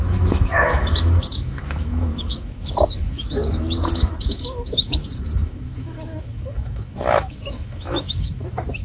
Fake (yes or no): yes